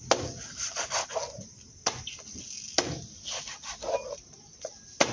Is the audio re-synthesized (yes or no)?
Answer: no